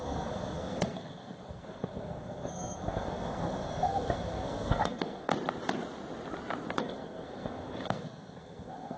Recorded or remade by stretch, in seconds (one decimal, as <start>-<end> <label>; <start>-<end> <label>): 0.0-5.3 remade; 5.3-6.8 recorded; 6.8-9.0 remade